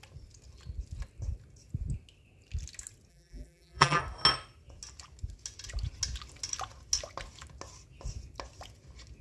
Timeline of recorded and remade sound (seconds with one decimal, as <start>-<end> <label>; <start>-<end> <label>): 0.0-3.1 recorded; 3.1-4.0 remade; 4.0-9.2 recorded